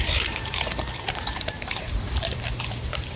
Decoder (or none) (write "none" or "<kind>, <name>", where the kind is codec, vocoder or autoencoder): vocoder, BigVGAN v2